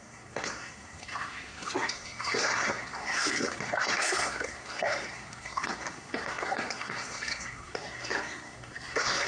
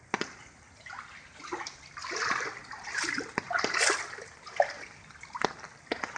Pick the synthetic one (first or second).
first